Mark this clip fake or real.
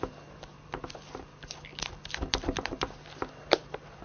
fake